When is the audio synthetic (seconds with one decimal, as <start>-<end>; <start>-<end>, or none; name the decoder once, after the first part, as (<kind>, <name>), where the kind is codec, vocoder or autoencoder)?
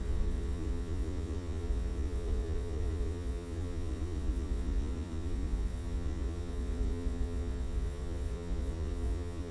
0.0-9.5 (vocoder, Vocos)